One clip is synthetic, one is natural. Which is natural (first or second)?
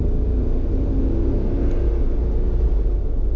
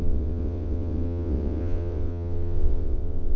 first